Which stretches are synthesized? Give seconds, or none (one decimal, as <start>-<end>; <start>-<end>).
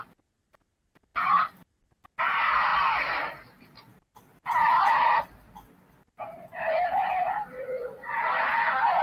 none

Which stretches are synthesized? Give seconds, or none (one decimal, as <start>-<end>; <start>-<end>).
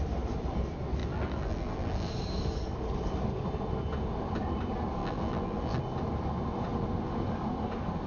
1.0-2.1; 5.0-5.8